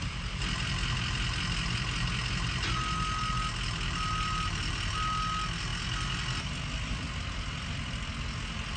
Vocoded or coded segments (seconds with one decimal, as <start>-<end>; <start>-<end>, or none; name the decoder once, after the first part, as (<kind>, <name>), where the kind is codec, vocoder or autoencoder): none